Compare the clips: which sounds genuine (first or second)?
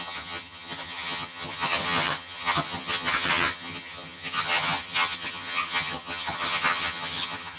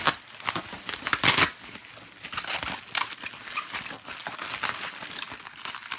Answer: second